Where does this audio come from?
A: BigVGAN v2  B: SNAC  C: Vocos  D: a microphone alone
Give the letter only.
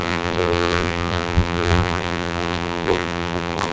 A